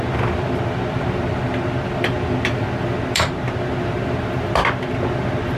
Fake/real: real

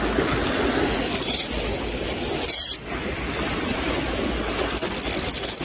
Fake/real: real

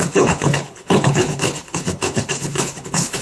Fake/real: fake